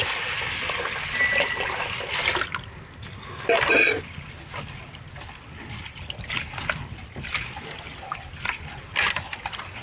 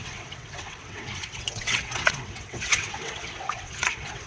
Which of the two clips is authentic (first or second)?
first